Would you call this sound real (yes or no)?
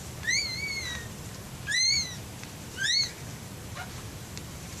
yes